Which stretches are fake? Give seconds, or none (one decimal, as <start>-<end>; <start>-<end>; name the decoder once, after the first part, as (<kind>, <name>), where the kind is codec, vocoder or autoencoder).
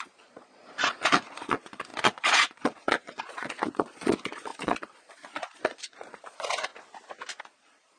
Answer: 0.0-6.7 (vocoder, Vocos); 7.4-8.0